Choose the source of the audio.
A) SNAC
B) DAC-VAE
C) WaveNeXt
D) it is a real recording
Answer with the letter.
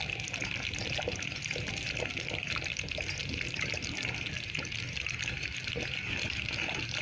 D